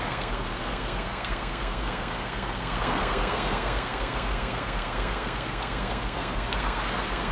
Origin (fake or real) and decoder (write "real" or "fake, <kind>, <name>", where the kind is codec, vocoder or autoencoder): fake, codec, SNAC